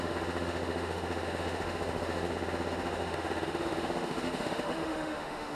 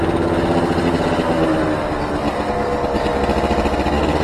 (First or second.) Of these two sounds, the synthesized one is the first